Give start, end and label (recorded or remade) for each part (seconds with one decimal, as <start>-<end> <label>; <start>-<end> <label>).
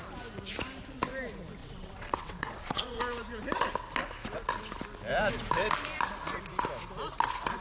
0.0-1.6 recorded; 1.6-3.0 remade; 3.0-7.6 recorded